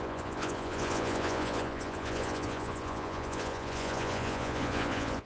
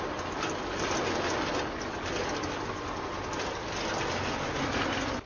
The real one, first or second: second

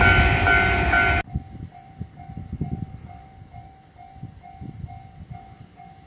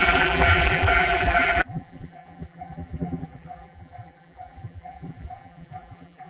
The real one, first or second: first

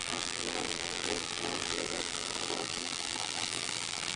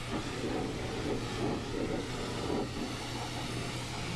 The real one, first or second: second